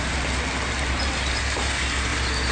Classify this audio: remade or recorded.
recorded